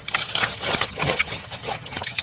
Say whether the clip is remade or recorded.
remade